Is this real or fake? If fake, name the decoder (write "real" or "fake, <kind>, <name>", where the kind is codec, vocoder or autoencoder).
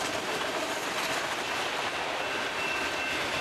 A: real